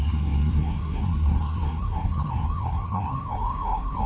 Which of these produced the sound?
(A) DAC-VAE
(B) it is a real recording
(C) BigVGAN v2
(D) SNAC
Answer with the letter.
D